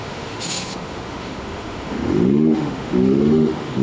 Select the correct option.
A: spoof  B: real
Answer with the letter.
A